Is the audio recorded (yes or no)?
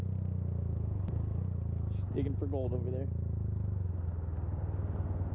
yes